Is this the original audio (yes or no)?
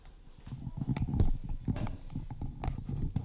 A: yes